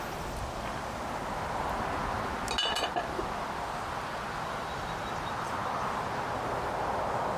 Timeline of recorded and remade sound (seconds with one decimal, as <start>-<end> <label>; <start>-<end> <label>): 0.0-7.4 recorded